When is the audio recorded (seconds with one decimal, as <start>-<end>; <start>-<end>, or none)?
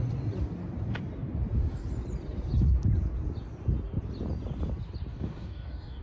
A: 0.0-5.1